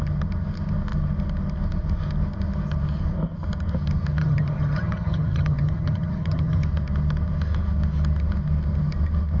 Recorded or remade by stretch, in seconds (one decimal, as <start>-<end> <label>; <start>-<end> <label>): 0.0-4.2 recorded; 4.2-6.6 remade; 6.6-9.4 recorded